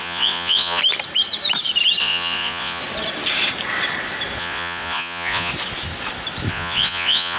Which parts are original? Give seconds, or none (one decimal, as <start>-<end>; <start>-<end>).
0.8-2.0; 2.8-4.4; 5.5-6.5